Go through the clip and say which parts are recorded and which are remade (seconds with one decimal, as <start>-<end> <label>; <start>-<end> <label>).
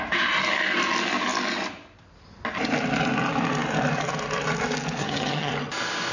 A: 0.0-5.0 recorded; 5.0-5.5 remade; 5.5-6.1 recorded